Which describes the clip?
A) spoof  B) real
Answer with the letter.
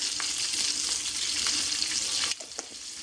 B